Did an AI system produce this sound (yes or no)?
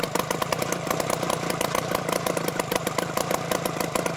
no